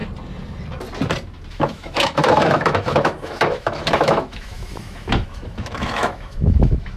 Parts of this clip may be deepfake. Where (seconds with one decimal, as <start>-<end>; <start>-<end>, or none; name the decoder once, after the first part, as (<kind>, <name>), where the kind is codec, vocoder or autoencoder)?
1.5-7.0 (autoencoder, DAC-VAE)